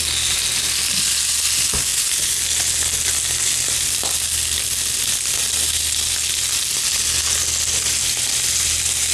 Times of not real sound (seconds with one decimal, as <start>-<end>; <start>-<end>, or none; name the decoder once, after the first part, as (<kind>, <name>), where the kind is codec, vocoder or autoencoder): none